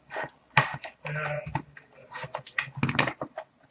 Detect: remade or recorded recorded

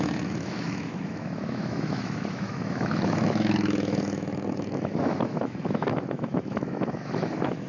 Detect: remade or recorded remade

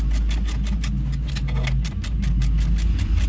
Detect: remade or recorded recorded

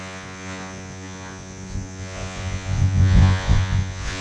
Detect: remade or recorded remade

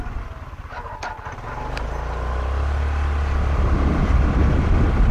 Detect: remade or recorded recorded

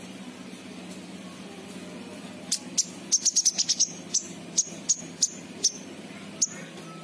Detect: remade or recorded recorded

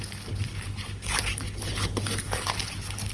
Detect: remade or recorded remade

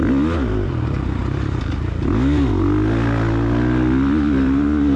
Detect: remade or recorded recorded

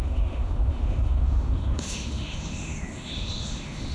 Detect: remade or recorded remade